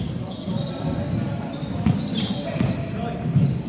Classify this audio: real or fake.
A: real